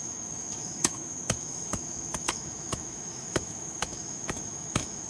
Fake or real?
fake